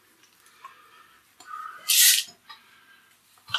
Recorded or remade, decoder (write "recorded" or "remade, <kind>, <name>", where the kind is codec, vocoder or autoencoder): recorded